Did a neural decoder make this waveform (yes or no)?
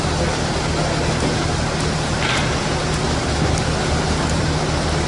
no